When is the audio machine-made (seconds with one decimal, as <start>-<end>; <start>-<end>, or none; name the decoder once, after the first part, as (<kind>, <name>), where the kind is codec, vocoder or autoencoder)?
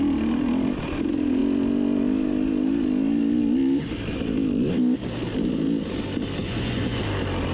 6.4-7.0 (vocoder, Vocos)